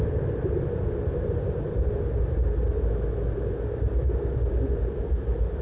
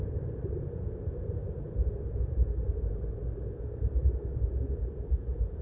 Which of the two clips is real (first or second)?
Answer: first